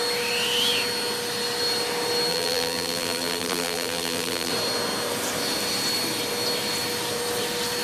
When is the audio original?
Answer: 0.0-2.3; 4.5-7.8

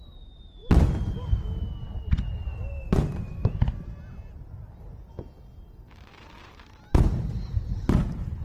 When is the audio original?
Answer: 0.0-8.4

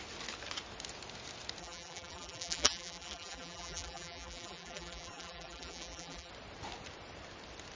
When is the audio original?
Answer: 0.0-1.6; 6.3-7.8

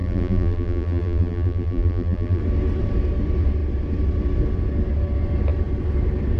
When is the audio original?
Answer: 2.4-6.4

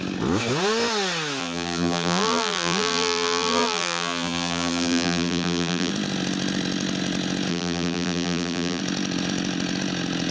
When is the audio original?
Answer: 0.0-1.4; 5.9-7.5; 8.8-10.3

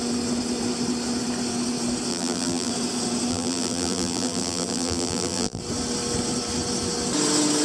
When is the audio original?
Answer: 0.0-2.1; 2.7-3.3; 5.6-7.6

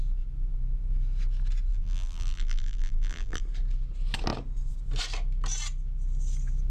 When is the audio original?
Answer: 0.0-1.7; 3.4-6.7

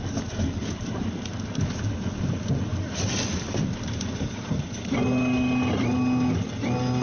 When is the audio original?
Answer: 0.0-0.6; 1.6-2.7; 3.6-7.0